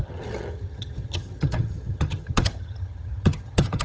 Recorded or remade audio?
remade